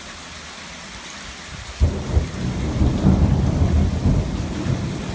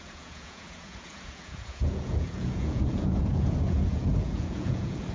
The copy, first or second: second